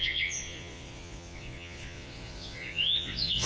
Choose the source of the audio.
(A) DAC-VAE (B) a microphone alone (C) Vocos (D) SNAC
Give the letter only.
C